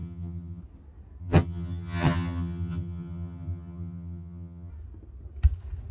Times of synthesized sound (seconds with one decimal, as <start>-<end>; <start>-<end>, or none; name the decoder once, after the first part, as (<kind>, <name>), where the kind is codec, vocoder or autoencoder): 0.0-0.6 (vocoder, HiFi-GAN); 1.2-4.7